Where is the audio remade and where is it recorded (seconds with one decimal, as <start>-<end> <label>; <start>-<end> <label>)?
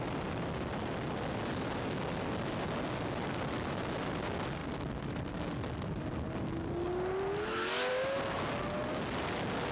0.0-9.7 recorded